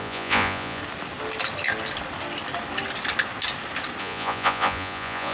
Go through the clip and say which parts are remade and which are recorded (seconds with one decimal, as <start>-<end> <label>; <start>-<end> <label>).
0.0-0.8 remade; 0.8-4.0 recorded; 4.0-5.3 remade